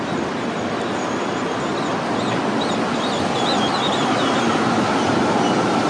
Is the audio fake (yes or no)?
no